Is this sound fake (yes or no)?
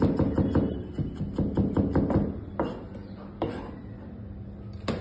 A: no